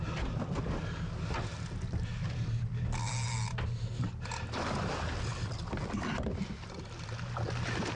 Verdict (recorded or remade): recorded